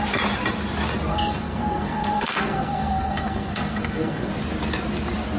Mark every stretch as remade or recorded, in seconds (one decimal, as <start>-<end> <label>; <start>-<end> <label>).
0.0-1.1 recorded; 1.1-4.3 remade; 4.3-5.4 recorded